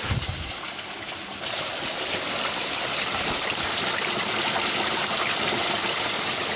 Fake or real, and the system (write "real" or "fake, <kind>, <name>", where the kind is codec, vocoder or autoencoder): real